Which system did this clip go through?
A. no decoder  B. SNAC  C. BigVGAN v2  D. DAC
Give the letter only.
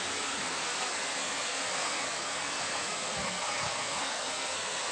B